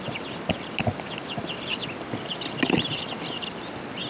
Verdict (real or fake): real